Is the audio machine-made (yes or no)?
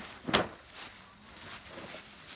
no